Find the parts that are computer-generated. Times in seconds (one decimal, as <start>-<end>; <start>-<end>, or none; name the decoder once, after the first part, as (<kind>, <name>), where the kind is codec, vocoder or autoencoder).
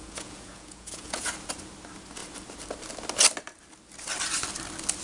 0.0-1.3 (vocoder, Vocos)